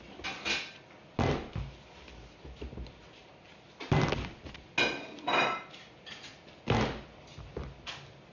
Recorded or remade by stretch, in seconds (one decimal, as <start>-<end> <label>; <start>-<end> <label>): 0.0-8.3 recorded